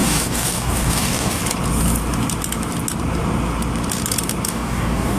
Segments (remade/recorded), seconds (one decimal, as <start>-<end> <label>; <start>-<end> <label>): 0.0-1.4 remade; 1.4-4.5 recorded; 4.5-5.2 remade